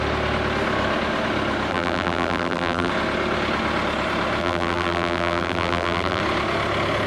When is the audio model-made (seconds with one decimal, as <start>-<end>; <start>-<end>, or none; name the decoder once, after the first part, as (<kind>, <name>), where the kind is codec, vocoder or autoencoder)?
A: 1.7-2.9 (vocoder, BigVGAN v2); 4.4-6.2